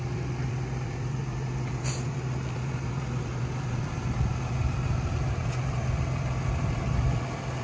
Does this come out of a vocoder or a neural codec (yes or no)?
yes